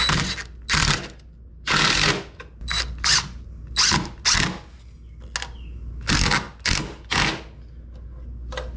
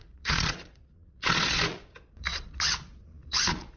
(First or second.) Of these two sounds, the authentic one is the first